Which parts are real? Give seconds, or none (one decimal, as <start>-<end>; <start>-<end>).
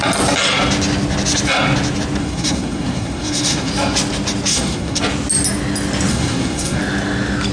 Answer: 0.0-2.2; 3.7-4.5; 5.0-6.1; 6.8-7.5